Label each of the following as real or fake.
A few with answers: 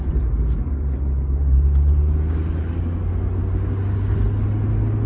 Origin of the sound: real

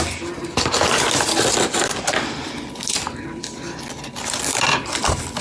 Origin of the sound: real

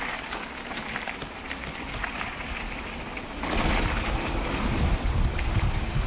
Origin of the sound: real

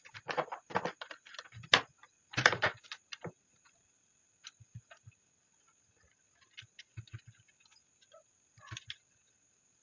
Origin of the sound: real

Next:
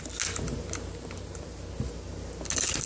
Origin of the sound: real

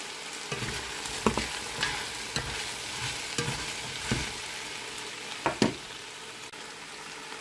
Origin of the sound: real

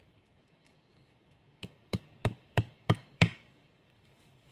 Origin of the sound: fake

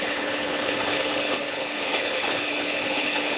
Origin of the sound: fake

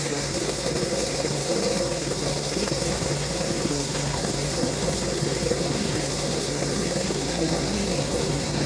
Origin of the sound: fake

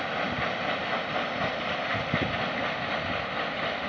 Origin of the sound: real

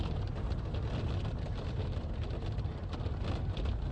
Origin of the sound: real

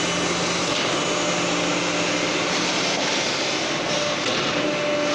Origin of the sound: real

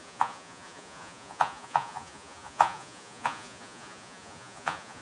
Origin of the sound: fake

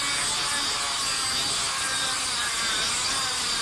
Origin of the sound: real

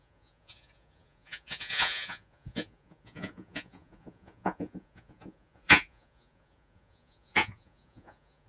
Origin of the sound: fake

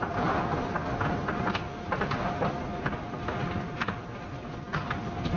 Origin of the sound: real